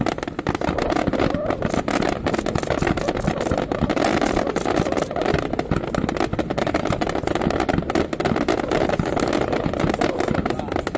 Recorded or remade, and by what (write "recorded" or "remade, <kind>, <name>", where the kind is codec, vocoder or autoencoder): recorded